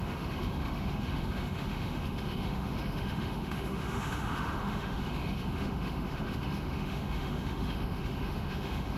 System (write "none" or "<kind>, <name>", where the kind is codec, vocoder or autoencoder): autoencoder, DAC-VAE